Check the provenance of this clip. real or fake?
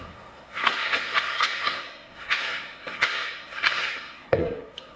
fake